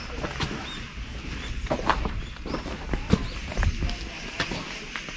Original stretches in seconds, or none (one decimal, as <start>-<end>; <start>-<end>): 0.0-0.6; 3.7-5.2